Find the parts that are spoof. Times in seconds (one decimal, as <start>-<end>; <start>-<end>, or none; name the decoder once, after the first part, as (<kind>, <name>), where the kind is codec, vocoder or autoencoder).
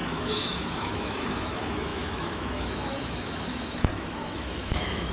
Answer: 0.0-5.1 (autoencoder, DAC-VAE)